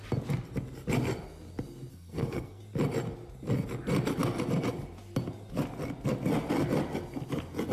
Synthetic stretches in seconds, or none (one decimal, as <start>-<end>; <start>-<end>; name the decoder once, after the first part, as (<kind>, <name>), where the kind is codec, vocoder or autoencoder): 1.9-2.6 (codec, SNAC)